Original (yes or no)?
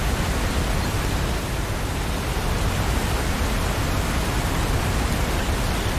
yes